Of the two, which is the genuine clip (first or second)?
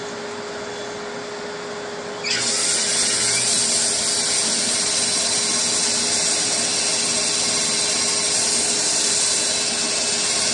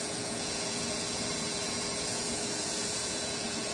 first